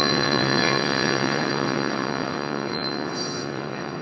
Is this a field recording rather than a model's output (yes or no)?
no